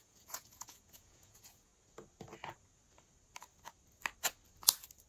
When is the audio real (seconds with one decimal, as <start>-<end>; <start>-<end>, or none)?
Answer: 1.7-5.1